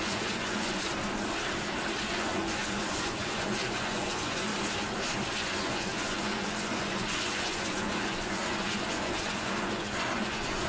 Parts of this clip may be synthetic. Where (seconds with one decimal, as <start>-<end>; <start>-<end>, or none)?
0.0-0.9; 2.1-4.5; 5.3-10.7